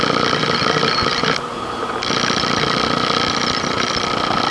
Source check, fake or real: real